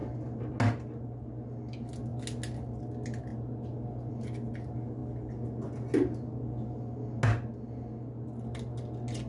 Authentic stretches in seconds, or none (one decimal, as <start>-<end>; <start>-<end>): 0.0-9.3